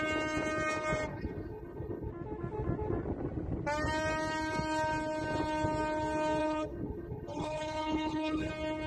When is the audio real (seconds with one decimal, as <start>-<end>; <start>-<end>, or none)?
0.0-1.1; 2.1-6.4; 8.5-8.9